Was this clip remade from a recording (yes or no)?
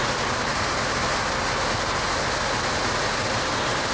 no